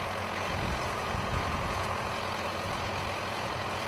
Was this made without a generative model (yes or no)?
no